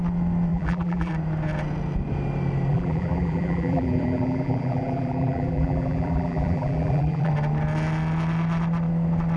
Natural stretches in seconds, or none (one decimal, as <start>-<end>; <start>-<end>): 0.0-0.5; 1.1-2.7; 7.3-9.4